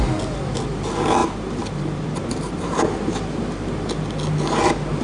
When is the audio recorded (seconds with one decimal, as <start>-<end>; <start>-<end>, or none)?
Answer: 0.0-1.2; 2.8-5.0